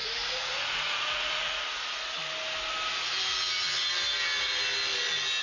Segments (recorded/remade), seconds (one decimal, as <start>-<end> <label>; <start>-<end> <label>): 0.0-2.2 remade; 2.2-5.4 recorded